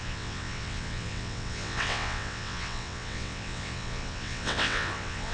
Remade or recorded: remade